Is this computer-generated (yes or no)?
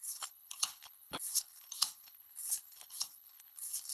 yes